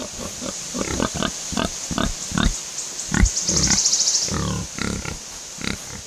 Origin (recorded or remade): recorded